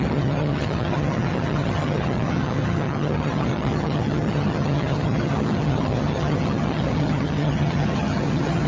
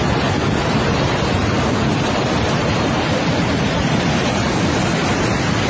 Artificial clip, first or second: first